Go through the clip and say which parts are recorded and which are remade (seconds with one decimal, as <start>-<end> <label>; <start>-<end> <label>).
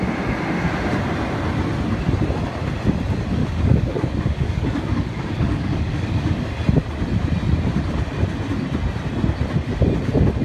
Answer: 0.0-3.4 recorded; 3.4-6.4 remade; 6.4-10.4 recorded